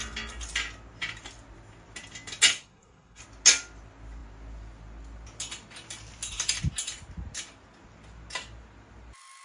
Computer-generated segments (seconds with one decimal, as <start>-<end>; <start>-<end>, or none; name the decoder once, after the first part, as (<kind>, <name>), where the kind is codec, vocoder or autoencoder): 2.5-3.2 (codec, SNAC)